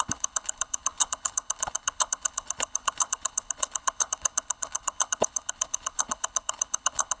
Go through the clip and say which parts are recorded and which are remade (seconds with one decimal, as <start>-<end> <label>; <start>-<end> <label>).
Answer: 0.0-7.2 remade